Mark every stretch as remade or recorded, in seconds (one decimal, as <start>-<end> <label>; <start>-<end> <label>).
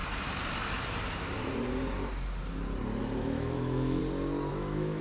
0.0-3.0 recorded; 3.0-4.0 remade; 4.0-4.5 recorded; 4.5-5.0 remade